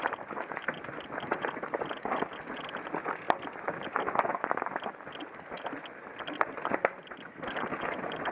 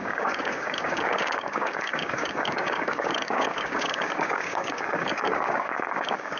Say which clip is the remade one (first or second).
second